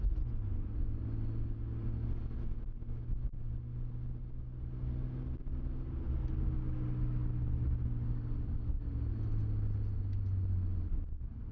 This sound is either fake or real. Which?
real